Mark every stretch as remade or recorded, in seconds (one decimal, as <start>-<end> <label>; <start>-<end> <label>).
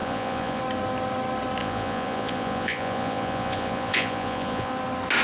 0.0-0.6 remade; 0.6-1.6 recorded; 1.6-4.7 remade; 4.7-5.2 recorded